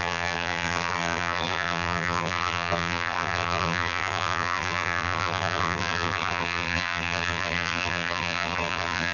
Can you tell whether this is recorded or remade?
remade